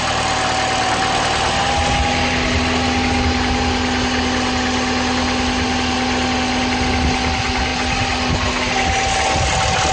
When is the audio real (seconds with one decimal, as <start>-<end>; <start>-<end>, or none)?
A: 0.0-9.9